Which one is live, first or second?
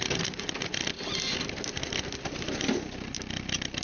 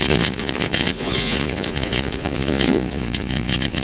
first